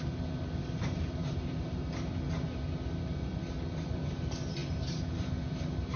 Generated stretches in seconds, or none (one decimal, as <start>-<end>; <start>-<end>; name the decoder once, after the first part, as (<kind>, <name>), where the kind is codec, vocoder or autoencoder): none